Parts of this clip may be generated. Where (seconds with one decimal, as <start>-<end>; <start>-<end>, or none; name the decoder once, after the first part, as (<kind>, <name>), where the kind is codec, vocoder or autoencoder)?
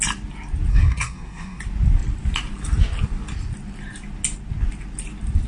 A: 0.7-1.6 (codec, SNAC)